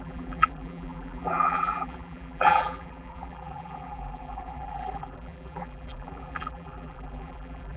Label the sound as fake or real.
fake